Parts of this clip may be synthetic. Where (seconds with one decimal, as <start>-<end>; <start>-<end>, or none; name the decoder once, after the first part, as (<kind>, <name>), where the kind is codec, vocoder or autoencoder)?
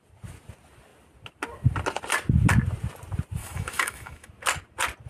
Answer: 3.4-4.3 (autoencoder, DAC-VAE)